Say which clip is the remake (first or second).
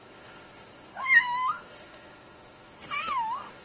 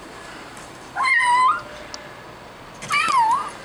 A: first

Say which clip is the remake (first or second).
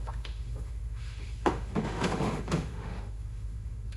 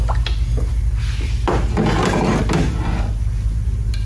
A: first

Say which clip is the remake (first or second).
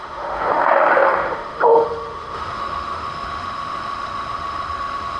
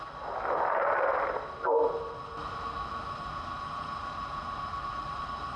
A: first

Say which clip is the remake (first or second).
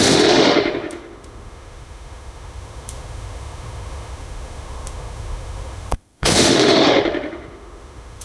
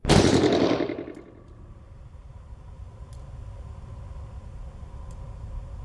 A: first